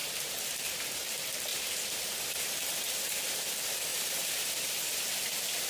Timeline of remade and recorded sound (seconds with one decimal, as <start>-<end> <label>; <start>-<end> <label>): 0.0-0.8 remade; 0.8-1.5 recorded; 1.5-3.2 remade; 3.2-3.9 recorded; 3.9-4.5 remade; 4.5-5.7 recorded

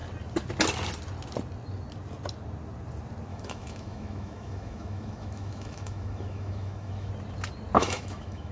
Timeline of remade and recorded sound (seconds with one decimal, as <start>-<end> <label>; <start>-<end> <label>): 0.0-3.3 recorded; 3.3-7.1 remade; 7.1-7.8 recorded; 7.8-8.5 remade